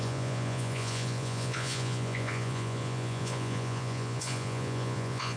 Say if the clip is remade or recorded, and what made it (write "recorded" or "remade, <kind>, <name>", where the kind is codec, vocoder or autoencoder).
remade, vocoder, Vocos